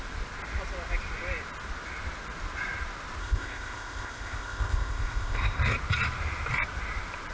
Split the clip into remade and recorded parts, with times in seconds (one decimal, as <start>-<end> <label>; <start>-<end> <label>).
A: 0.0-3.2 recorded; 3.2-5.6 remade; 5.6-7.3 recorded